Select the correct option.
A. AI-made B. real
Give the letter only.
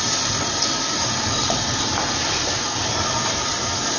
B